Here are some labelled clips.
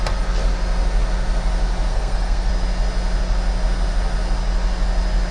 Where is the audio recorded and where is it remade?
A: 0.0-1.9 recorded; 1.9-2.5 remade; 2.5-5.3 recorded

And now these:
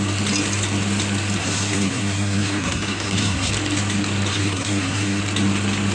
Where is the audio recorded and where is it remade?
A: 0.0-1.4 recorded; 1.4-3.5 remade; 3.5-4.3 recorded; 4.3-5.2 remade; 5.2-5.9 recorded

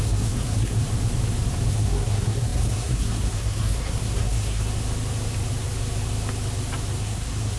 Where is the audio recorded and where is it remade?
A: 0.0-0.8 remade; 0.8-1.7 recorded; 1.7-4.6 remade; 4.6-7.0 recorded; 7.0-7.6 remade